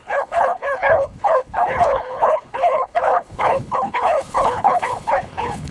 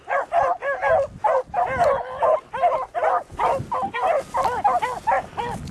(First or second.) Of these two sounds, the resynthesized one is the first